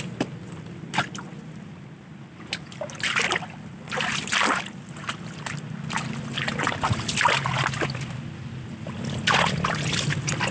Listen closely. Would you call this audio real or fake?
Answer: real